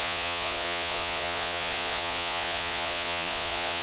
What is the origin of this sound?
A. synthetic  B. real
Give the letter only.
A